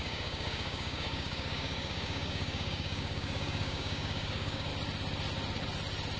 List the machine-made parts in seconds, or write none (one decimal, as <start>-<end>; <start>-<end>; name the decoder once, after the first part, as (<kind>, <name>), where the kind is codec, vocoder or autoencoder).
0.0-4.7 (codec, DAC)